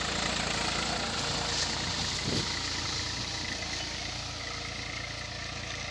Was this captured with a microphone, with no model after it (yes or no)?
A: yes